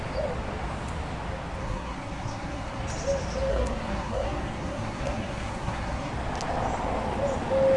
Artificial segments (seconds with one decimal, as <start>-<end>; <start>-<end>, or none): 1.6-2.8; 3.5-6.1